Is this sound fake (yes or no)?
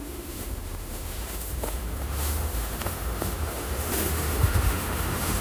yes